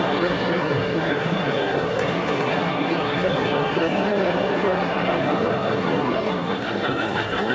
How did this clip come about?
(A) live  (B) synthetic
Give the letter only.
B